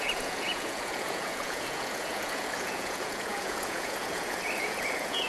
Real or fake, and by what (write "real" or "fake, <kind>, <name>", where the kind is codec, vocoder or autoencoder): fake, vocoder, Vocos